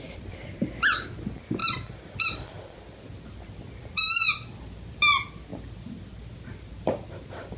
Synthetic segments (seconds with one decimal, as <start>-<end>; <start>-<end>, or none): none